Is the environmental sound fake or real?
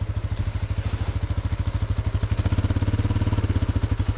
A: real